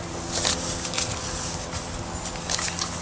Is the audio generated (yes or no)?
no